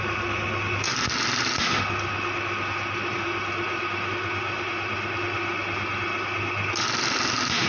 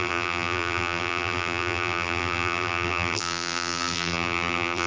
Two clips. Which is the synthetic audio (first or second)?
second